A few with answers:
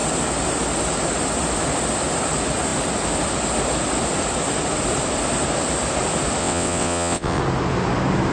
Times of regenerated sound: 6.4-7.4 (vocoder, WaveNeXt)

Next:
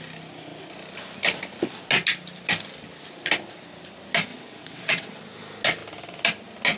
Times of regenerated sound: 4.3-5.2 (vocoder, WaveNeXt)